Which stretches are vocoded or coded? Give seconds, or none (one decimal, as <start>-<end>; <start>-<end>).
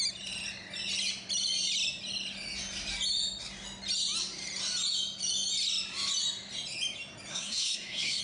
7.3-8.2